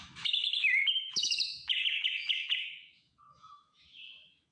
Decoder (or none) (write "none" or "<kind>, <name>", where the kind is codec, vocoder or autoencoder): autoencoder, DAC-VAE